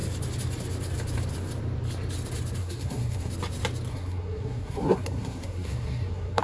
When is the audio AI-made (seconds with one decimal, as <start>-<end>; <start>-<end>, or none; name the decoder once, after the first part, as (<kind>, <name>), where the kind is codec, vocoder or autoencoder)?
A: 2.6-3.3 (codec, SNAC); 3.9-6.4